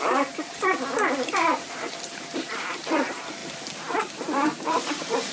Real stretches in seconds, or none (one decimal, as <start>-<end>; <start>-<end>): 3.4-4.0